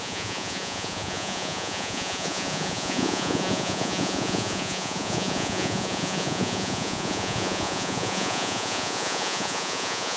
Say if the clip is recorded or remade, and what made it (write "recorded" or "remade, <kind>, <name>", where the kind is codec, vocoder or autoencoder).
remade, vocoder, Vocos